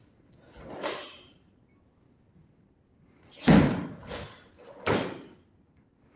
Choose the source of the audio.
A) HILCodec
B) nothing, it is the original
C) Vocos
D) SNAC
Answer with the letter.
B